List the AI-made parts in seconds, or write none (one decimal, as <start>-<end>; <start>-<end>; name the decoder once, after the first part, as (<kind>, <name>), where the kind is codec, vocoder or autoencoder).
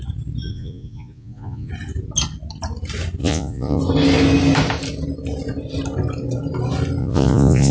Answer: 0.5-1.7 (vocoder, Vocos); 3.2-3.8; 7.0-7.7